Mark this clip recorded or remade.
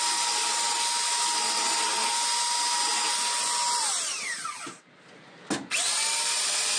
recorded